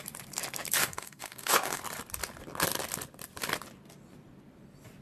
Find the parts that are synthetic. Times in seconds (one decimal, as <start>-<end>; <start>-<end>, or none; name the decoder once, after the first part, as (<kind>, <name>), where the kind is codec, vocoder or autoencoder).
0.8-1.8 (codec, DAC)